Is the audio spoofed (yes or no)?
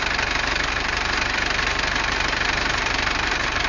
yes